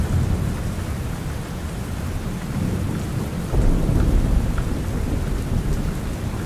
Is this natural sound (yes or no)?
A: yes